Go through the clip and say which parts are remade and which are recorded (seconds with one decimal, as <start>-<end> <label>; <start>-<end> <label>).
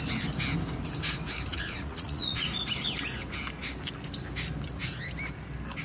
0.0-1.5 recorded; 1.5-2.5 remade; 2.5-5.8 recorded